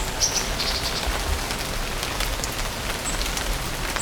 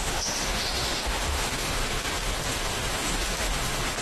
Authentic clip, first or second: first